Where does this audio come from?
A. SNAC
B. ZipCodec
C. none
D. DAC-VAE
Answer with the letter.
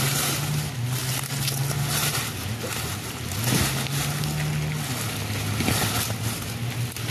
C